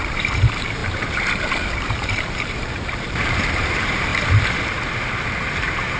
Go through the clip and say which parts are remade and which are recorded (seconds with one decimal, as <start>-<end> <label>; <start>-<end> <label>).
0.0-4.1 remade; 4.1-5.5 recorded; 5.5-6.0 remade